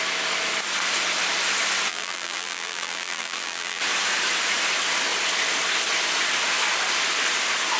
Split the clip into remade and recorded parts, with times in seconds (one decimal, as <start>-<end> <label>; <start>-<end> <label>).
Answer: 0.0-1.9 recorded; 1.9-3.8 remade; 3.8-7.8 recorded